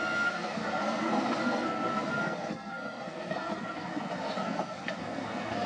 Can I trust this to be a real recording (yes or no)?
no